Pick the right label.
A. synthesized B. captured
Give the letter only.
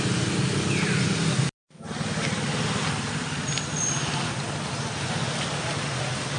B